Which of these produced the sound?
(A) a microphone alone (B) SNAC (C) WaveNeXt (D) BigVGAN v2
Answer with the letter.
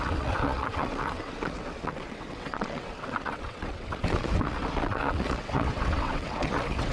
C